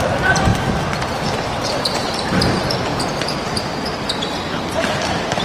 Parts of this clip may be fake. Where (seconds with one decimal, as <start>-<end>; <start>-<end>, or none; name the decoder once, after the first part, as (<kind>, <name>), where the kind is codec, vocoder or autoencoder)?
0.0-0.5 (vocoder, BigVGAN v2); 1.7-5.4